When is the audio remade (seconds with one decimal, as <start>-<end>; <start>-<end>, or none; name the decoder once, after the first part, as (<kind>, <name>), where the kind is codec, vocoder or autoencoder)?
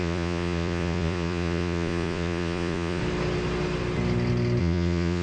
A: 0.0-3.0 (vocoder, Vocos); 4.6-5.2